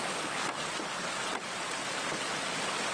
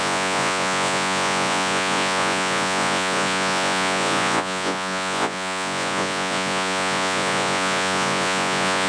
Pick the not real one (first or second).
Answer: second